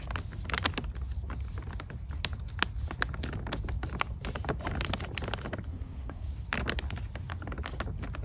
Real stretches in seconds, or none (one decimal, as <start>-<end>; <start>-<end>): 0.0-5.7; 6.3-8.2